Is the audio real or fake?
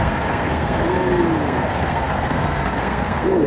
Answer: fake